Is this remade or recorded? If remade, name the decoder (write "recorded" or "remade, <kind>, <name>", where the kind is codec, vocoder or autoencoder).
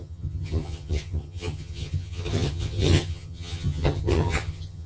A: remade, vocoder, HiFi-GAN